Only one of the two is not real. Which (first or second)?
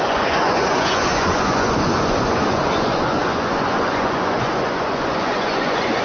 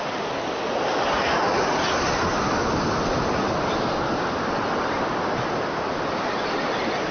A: first